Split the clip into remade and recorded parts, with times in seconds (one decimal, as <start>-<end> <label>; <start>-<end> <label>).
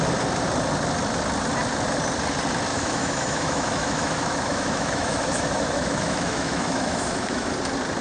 0.0-2.7 recorded; 2.7-7.5 remade; 7.5-8.0 recorded